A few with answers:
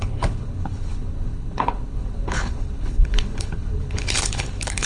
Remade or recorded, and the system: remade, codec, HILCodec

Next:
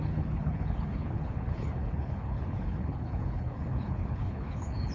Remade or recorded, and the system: remade, codec, HILCodec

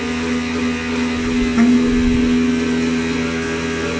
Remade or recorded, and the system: recorded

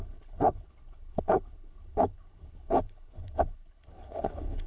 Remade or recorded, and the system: remade, codec, HILCodec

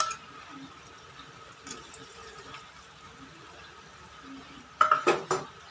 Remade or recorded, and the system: recorded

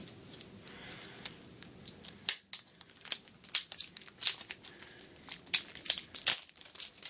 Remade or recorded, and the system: recorded